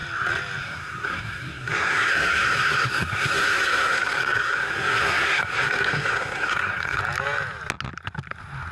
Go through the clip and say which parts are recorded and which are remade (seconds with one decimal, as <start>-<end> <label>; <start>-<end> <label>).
0.0-0.6 recorded; 0.6-7.0 remade; 7.0-8.7 recorded